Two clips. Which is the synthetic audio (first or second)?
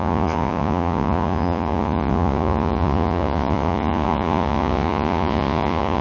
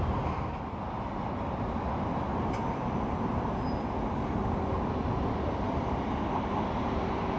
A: first